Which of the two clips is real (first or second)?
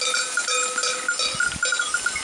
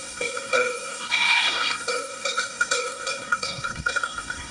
first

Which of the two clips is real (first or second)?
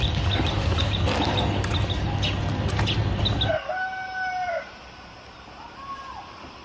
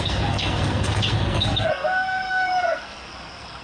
first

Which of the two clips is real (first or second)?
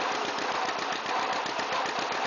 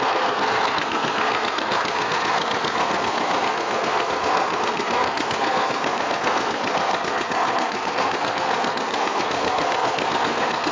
first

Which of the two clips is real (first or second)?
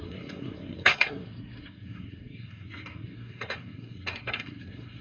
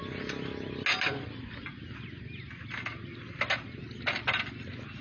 second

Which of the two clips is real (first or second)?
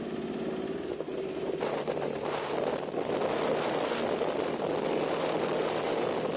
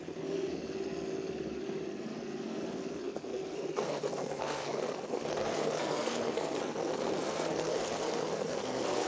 first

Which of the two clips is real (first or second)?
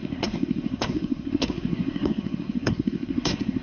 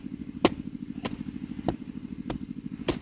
second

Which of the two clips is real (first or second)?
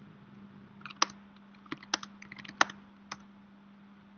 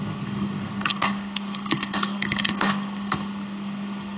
first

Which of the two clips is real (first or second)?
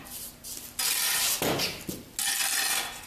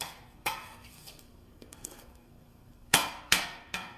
first